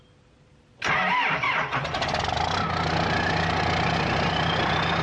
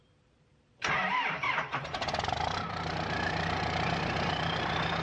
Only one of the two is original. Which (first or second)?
first